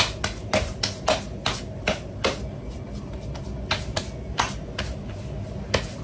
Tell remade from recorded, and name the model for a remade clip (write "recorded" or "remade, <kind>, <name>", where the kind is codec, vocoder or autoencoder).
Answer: recorded